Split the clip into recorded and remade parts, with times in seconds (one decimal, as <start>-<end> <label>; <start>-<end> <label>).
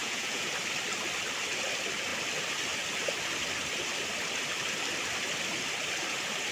0.0-0.5 remade; 0.5-6.5 recorded